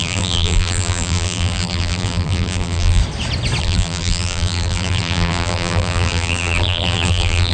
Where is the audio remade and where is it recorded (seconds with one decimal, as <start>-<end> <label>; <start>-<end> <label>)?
0.0-3.0 remade; 3.0-3.6 recorded; 3.6-7.5 remade